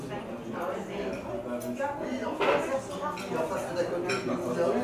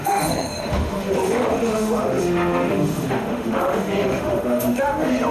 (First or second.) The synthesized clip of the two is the second